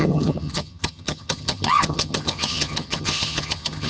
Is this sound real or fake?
fake